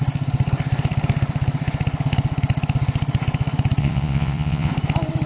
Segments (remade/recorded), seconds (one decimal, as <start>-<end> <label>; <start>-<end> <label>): 0.0-3.8 recorded; 3.8-4.7 remade; 4.7-5.3 recorded